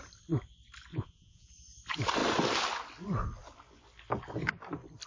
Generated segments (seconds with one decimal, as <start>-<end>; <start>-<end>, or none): 0.9-1.5